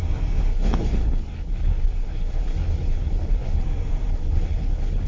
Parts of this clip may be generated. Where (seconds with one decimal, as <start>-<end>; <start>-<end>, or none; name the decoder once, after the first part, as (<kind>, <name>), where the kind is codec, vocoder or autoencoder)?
0.5-3.6 (codec, HILCodec); 4.1-5.1